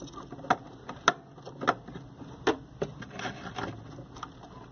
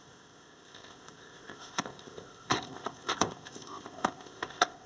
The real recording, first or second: first